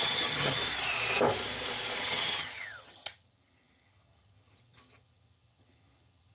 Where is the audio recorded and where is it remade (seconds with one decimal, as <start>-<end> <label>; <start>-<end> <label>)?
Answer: 0.0-0.6 remade; 0.6-2.0 recorded; 2.0-6.3 remade